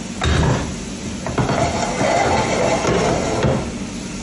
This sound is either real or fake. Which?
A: real